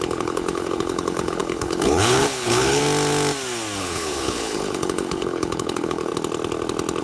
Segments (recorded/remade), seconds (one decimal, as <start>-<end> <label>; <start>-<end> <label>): 0.0-2.8 remade; 2.8-3.8 recorded; 3.8-6.1 remade; 6.1-7.0 recorded